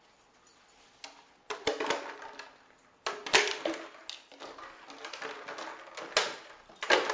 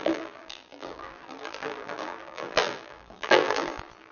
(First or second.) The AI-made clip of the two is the second